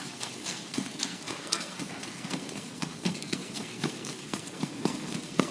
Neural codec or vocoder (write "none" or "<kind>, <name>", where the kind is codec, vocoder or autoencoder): codec, SNAC